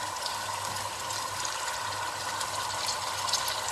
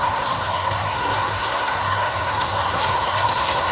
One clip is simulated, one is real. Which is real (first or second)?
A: first